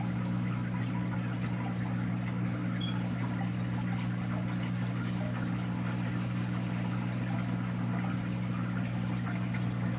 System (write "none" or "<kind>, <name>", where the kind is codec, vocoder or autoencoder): none